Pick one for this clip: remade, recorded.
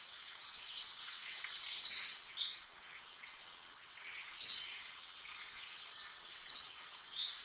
remade